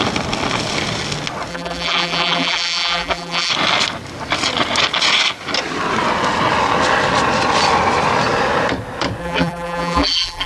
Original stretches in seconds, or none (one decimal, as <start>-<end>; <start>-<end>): 0.0-1.5; 3.5-9.2